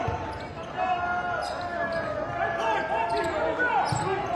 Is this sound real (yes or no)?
yes